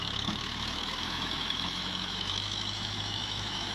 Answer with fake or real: fake